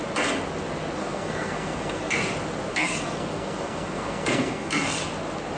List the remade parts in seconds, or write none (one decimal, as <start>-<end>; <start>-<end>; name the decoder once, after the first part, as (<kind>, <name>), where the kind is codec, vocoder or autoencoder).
1.0-2.2 (codec, SNAC); 2.7-5.0